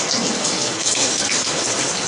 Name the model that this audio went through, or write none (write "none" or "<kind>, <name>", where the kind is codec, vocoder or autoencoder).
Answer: codec, SNAC